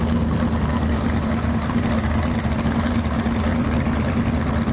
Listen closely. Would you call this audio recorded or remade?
recorded